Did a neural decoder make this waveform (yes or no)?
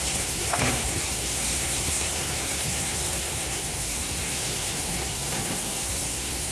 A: yes